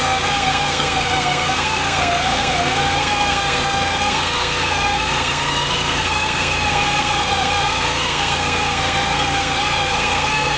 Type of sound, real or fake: fake